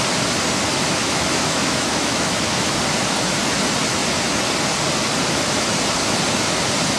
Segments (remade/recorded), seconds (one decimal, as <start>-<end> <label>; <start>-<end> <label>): 0.0-1.0 recorded; 1.0-2.8 remade; 2.8-7.0 recorded